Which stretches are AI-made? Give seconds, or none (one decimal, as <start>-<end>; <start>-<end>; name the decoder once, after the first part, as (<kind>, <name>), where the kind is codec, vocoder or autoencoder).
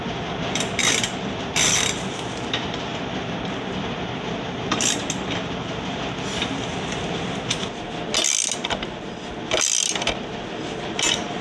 0.8-2.5 (vocoder, BigVGAN v2); 2.9-7.1